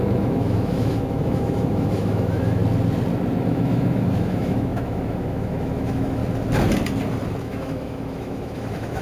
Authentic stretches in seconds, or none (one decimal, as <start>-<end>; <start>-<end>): 2.6-3.4; 6.2-7.4